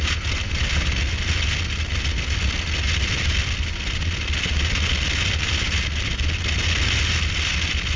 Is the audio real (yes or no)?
yes